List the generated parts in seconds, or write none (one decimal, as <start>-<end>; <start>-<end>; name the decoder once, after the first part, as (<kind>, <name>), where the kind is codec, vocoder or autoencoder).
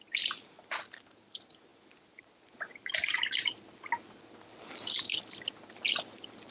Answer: none